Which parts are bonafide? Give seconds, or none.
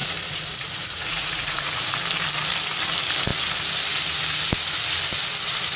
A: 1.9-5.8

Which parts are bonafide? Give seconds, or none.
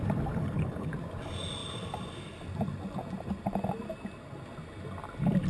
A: 0.0-0.4; 0.9-5.5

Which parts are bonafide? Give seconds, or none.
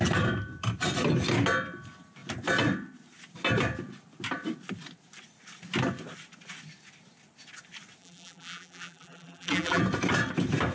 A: 0.0-8.0; 9.8-10.7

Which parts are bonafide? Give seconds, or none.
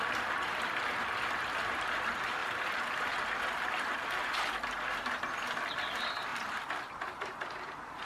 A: 2.4-4.5